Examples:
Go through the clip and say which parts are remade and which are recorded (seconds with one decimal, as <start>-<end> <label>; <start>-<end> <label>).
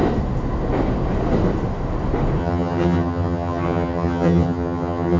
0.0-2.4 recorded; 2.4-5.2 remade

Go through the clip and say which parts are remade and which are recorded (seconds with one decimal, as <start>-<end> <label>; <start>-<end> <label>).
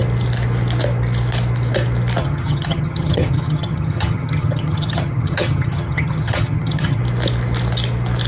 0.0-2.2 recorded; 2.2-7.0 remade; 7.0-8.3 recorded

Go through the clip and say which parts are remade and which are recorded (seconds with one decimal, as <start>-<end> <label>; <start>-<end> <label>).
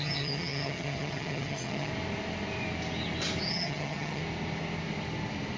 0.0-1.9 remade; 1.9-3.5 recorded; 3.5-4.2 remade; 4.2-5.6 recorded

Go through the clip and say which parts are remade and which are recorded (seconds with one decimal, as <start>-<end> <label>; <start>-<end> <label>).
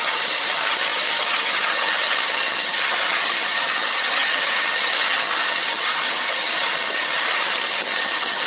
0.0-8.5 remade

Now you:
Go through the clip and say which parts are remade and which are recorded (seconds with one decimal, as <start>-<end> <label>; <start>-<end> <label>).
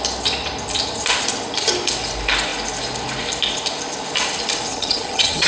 0.0-4.7 recorded; 4.7-5.5 remade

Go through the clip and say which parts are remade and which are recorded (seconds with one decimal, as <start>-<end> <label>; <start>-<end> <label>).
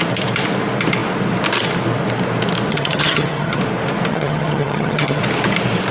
0.0-2.7 recorded; 2.7-3.6 remade; 3.6-4.1 recorded; 4.1-5.2 remade; 5.2-5.9 recorded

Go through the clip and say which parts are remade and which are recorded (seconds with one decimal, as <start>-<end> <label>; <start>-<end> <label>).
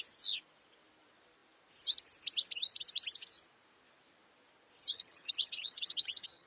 0.0-4.9 recorded; 4.9-6.5 remade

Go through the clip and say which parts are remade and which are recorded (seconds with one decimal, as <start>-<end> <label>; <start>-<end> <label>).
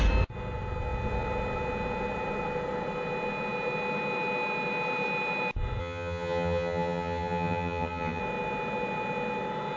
0.0-5.8 recorded; 5.8-8.2 remade; 8.2-9.8 recorded